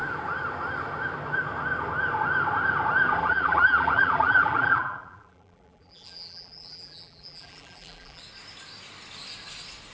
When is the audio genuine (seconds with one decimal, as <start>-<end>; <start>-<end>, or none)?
0.0-3.2; 8.2-9.9